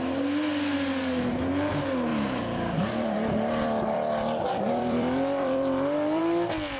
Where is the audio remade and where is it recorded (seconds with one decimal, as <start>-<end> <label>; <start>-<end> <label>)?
0.0-2.1 recorded; 2.1-6.2 remade; 6.2-6.8 recorded